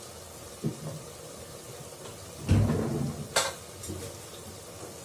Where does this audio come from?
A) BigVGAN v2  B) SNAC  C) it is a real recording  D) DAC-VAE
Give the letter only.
C